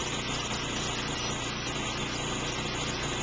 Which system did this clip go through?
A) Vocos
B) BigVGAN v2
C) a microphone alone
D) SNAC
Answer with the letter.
C